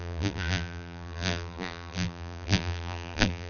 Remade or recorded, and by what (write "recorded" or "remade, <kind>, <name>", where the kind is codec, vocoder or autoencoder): remade, vocoder, BigVGAN v2